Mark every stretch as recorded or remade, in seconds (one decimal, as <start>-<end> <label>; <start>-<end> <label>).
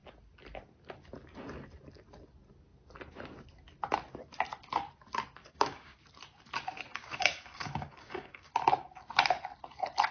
0.0-5.4 recorded; 5.4-6.0 remade; 6.0-6.9 recorded; 6.9-8.5 remade; 8.5-10.1 recorded